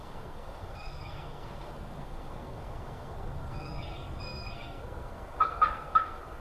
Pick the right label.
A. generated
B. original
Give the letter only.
A